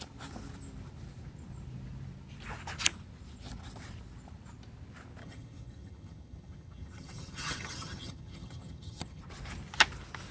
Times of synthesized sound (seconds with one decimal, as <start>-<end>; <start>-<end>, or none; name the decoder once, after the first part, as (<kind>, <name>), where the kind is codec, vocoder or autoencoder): 5.2-9.2 (vocoder, HiFi-GAN)

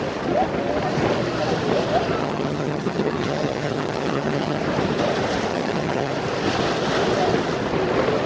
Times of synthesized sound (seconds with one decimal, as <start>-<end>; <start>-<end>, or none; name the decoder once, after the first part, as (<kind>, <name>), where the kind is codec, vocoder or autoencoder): 2.2-4.6 (vocoder, HiFi-GAN); 5.5-6.1

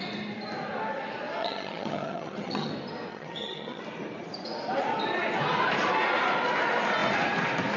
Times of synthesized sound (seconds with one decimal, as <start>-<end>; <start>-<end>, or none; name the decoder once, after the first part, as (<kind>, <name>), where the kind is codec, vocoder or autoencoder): 1.4-2.7 (vocoder, HiFi-GAN); 3.1-3.8

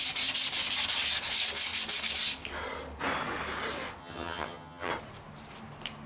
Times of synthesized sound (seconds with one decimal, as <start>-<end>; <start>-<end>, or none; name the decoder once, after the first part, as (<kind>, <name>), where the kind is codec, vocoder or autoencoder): 4.0-4.9 (vocoder, HiFi-GAN)

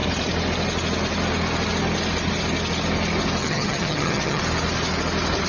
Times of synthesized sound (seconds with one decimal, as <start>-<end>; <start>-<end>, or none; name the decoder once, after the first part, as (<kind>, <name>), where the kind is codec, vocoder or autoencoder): 3.4-4.4 (vocoder, HiFi-GAN)